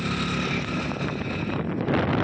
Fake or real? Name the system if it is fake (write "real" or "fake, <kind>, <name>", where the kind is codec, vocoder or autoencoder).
real